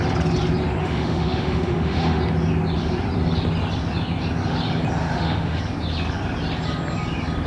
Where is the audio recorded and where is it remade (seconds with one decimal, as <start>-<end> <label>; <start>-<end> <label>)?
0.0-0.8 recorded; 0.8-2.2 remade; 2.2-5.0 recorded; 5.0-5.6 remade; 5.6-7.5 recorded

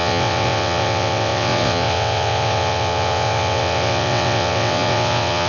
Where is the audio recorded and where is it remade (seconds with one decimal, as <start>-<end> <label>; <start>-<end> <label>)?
0.0-5.5 remade

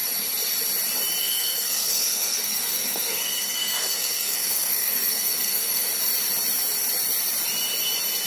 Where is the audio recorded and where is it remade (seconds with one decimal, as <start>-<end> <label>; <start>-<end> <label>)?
0.0-1.2 recorded; 1.2-5.9 remade; 5.9-8.3 recorded